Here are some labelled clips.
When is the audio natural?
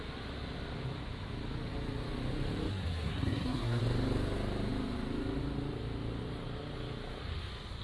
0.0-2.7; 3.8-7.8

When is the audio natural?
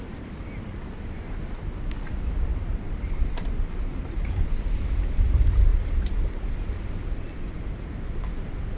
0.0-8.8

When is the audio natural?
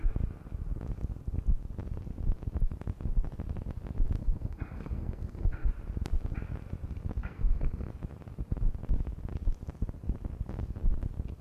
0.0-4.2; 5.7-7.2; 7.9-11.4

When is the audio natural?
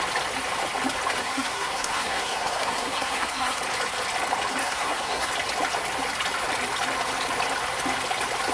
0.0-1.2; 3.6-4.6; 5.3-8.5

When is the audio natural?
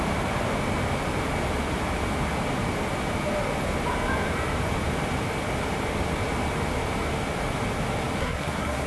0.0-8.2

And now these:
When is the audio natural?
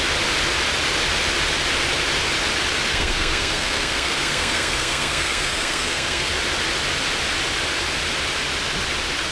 0.0-2.9; 6.3-9.3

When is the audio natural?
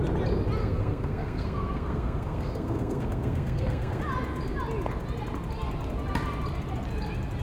0.0-0.6; 4.0-7.4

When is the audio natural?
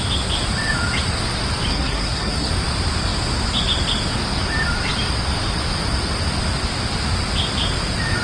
0.0-1.7; 2.5-8.2